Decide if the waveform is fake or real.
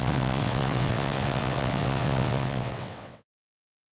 fake